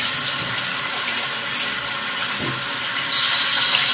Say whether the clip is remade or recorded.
recorded